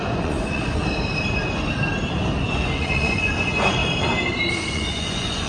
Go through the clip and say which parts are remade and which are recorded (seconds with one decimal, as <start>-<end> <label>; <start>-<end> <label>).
0.0-0.8 remade; 0.8-2.4 recorded; 2.4-3.8 remade; 3.8-4.5 recorded; 4.5-5.5 remade